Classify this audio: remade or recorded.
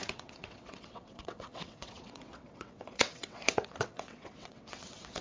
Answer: remade